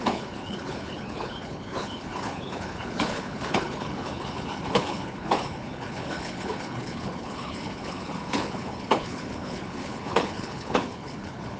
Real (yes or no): no